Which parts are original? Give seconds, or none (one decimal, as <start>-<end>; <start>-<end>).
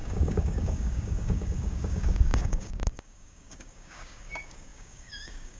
none